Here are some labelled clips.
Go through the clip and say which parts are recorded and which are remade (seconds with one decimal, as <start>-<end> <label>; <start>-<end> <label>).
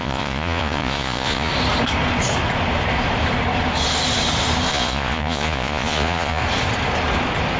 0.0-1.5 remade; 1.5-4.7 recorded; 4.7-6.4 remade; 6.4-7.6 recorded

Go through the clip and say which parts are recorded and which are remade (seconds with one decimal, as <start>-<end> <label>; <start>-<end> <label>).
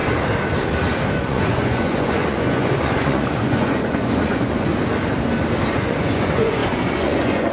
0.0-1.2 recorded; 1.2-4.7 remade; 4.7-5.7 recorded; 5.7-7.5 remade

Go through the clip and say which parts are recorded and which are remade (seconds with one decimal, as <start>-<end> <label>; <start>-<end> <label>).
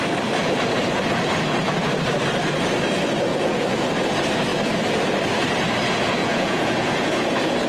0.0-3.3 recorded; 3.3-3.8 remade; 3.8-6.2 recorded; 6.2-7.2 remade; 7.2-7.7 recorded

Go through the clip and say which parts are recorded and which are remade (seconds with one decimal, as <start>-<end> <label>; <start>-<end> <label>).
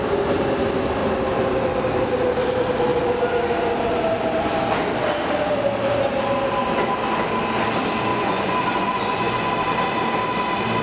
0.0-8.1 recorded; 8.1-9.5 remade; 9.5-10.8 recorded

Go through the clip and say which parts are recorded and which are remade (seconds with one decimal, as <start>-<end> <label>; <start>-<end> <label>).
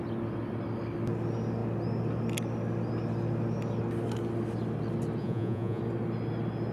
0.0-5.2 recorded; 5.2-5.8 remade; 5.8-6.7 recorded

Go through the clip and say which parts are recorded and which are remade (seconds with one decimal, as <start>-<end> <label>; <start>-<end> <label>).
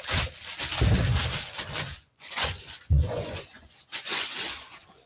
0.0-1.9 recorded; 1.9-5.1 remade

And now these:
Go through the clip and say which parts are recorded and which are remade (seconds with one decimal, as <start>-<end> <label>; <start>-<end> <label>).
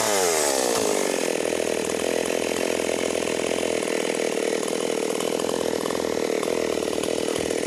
0.0-7.7 recorded